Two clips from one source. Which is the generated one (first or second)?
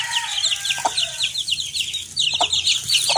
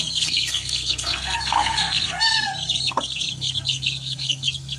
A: second